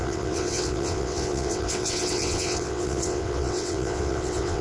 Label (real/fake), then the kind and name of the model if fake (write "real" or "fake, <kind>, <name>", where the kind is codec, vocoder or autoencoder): fake, vocoder, WaveNeXt